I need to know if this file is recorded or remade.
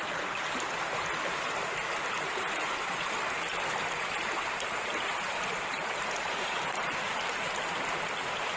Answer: recorded